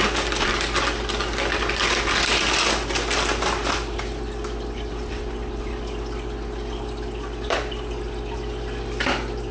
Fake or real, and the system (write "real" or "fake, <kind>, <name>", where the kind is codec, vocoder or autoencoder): real